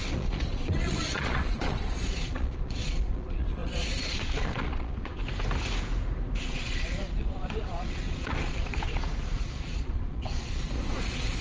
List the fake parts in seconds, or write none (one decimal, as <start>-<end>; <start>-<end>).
0.0-5.2; 6.4-11.4